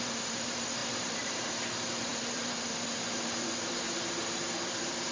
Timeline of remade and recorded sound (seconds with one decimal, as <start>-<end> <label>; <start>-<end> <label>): 0.0-5.1 remade